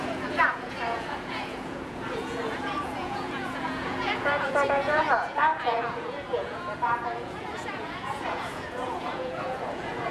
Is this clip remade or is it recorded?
remade